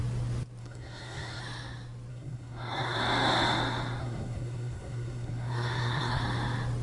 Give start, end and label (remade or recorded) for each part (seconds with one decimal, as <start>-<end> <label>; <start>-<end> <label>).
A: 0.0-0.6 recorded; 0.6-1.4 remade; 1.4-2.1 recorded; 2.1-3.0 remade; 3.0-4.0 recorded; 4.0-6.2 remade; 6.2-6.8 recorded